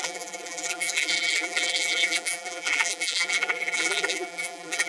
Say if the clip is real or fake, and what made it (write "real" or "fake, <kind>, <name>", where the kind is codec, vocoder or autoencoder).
fake, vocoder, BigVGAN v2